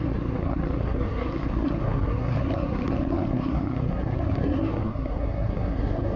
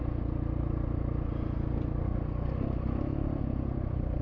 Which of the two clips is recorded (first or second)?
second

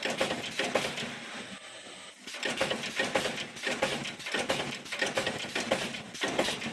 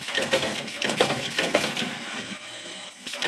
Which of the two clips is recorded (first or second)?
first